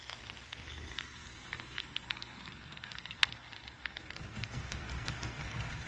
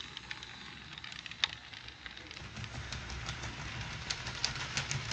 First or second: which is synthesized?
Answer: first